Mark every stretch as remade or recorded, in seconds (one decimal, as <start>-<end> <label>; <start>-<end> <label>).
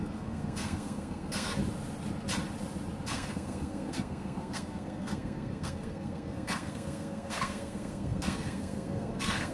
0.0-1.6 remade; 1.6-3.1 recorded; 3.1-9.5 remade